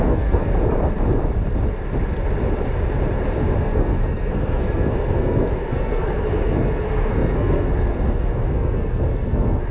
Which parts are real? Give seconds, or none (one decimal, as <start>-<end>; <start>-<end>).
0.5-3.6

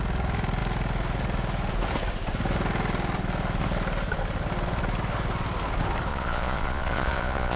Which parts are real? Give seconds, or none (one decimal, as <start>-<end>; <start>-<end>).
0.0-6.1